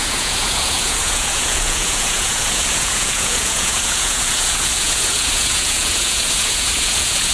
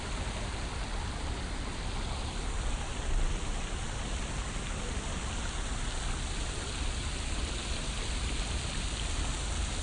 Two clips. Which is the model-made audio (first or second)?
first